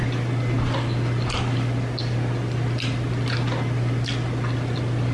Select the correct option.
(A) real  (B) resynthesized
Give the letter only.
A